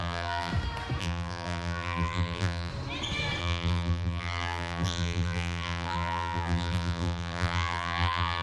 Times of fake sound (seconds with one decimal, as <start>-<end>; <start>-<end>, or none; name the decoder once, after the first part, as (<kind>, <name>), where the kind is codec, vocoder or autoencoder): 0.0-0.5 (vocoder, BigVGAN v2); 1.0-2.7; 3.4-8.4